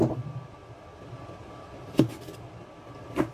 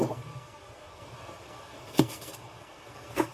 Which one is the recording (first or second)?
first